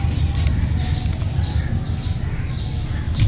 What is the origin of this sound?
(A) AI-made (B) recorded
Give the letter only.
B